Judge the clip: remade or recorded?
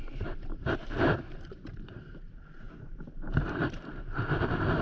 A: remade